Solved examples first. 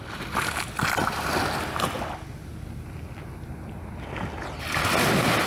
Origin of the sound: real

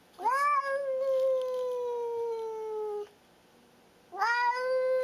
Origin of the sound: real